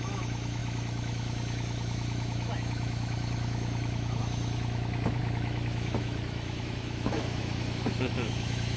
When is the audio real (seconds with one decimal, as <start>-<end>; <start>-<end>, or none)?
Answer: none